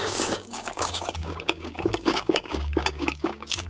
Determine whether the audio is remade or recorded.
remade